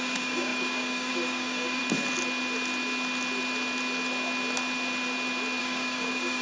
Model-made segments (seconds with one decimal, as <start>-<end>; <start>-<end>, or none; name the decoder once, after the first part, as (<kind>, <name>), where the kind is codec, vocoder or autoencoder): 0.0-1.8 (codec, DAC); 5.6-6.4